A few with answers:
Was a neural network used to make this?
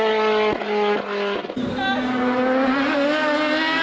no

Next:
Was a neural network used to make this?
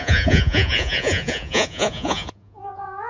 yes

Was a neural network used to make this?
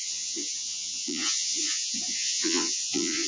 yes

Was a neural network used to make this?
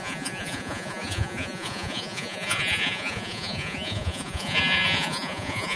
yes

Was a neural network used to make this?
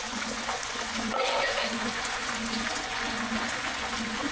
yes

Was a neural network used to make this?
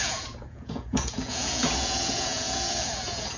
yes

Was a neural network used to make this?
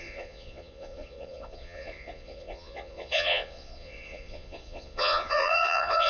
yes